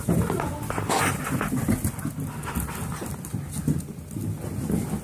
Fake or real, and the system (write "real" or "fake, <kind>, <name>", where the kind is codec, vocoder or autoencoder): real